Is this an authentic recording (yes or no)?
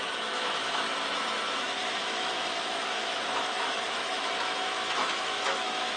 no